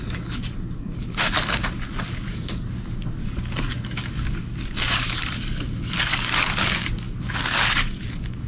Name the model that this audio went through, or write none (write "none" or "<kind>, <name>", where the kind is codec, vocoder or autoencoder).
codec, DAC